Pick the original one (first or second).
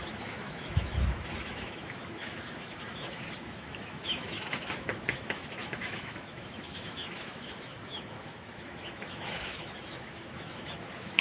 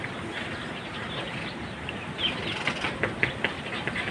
second